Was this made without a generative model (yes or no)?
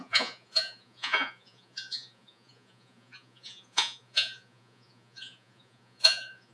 no